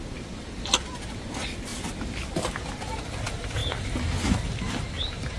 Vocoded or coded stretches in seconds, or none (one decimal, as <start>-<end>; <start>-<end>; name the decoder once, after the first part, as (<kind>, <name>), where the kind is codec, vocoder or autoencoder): none